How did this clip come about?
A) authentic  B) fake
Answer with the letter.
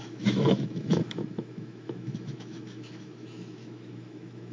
B